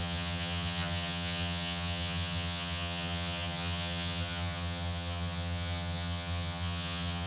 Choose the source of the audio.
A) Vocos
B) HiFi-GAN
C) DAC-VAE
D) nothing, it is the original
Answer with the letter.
B